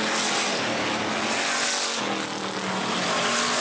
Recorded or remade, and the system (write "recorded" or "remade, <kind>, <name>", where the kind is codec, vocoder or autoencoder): recorded